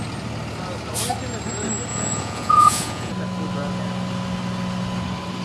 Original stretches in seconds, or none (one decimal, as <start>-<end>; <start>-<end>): 0.0-1.9; 3.1-5.4